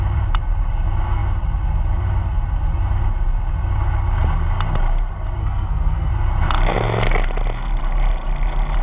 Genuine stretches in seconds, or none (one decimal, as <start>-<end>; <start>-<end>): 0.0-5.4; 6.1-8.8